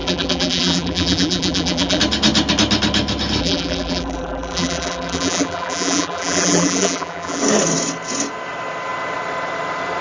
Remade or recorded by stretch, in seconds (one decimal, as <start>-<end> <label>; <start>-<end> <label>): 0.0-2.0 remade; 2.0-3.4 recorded; 3.4-7.4 remade; 7.4-10.0 recorded